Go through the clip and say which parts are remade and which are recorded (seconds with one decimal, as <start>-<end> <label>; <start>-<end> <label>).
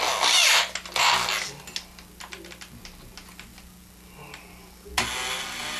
0.0-5.8 recorded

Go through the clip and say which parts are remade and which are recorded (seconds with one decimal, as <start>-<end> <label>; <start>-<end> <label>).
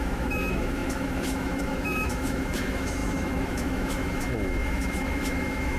0.0-5.8 remade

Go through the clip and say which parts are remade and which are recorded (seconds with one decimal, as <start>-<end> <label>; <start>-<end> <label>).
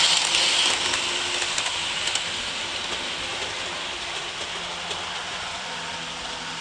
0.0-5.2 recorded; 5.2-5.8 remade; 5.8-6.6 recorded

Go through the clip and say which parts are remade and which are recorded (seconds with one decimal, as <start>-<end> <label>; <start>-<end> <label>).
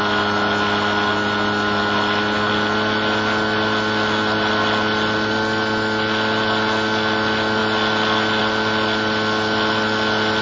0.0-10.4 recorded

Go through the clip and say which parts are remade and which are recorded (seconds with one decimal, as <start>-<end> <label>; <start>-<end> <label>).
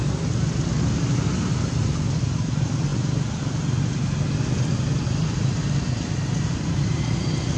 0.0-7.6 recorded